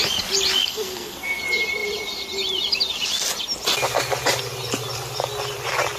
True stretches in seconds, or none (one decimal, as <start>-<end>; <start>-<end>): 0.0-0.6; 1.4-6.0